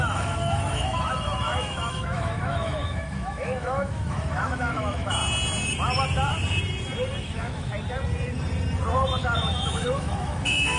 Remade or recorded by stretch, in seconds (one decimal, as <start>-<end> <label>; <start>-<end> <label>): 0.0-5.2 remade; 5.2-7.2 recorded; 7.2-7.7 remade; 7.7-9.2 recorded; 9.2-10.8 remade